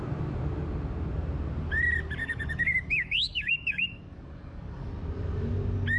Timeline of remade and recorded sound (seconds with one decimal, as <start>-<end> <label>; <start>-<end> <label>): 0.0-2.2 recorded; 2.2-4.9 remade; 4.9-6.0 recorded